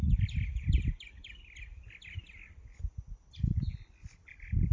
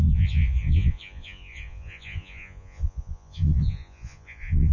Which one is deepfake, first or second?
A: second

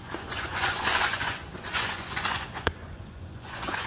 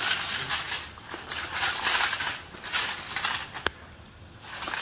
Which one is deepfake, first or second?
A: first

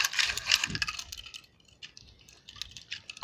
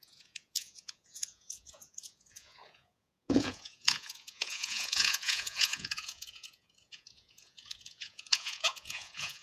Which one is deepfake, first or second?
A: second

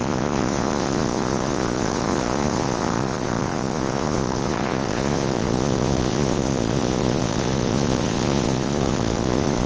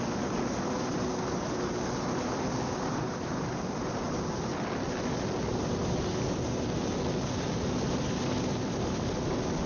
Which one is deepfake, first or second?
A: first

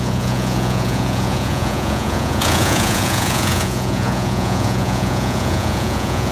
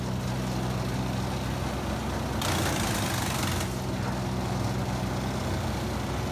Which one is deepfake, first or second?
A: first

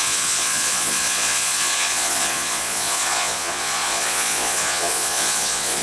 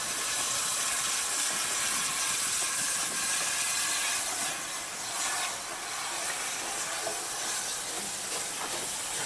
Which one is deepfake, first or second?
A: first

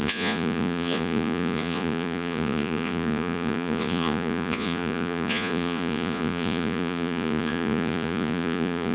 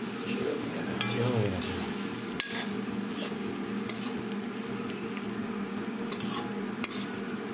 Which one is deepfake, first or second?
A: first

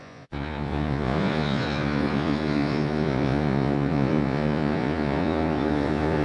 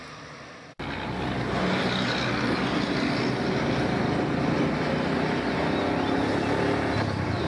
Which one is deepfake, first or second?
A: first